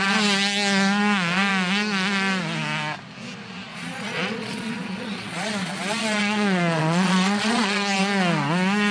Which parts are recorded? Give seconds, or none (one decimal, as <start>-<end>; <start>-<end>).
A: 0.0-3.7; 8.0-8.9